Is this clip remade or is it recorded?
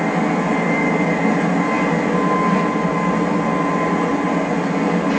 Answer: recorded